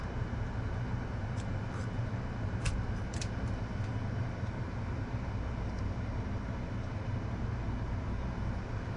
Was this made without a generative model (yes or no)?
no